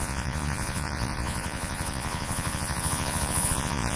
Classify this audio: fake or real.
fake